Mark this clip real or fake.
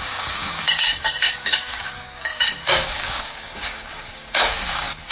fake